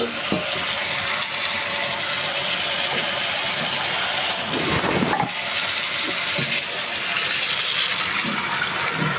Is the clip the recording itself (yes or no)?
yes